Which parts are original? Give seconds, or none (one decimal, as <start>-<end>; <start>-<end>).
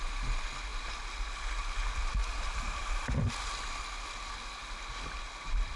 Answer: 0.0-5.8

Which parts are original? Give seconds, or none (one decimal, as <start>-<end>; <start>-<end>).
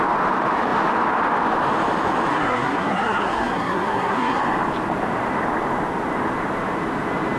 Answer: 0.0-2.3; 4.4-7.4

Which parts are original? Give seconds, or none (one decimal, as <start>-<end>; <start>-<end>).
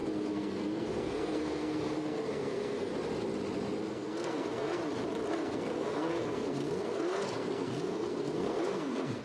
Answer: 2.9-3.9; 4.8-5.3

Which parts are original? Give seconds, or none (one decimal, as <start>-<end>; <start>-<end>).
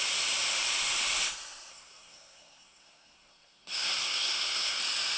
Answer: 0.0-1.7; 4.8-5.2